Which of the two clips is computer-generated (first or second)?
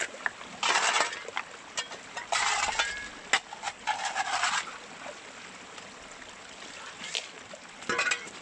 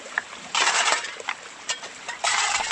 second